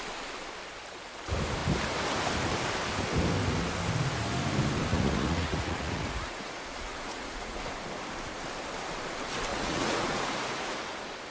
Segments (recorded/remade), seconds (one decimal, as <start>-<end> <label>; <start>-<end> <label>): 0.0-4.9 recorded; 4.9-7.6 remade; 7.6-9.5 recorded; 9.5-10.8 remade; 10.8-11.3 recorded